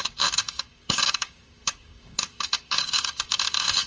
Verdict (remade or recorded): remade